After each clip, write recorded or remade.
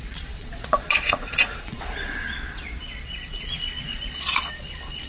remade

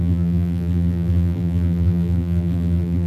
remade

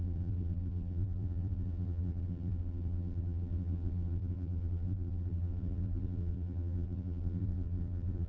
remade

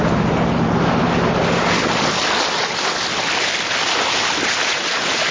recorded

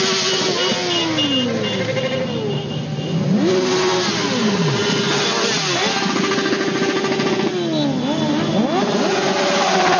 recorded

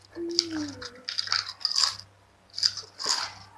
recorded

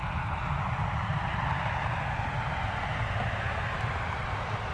recorded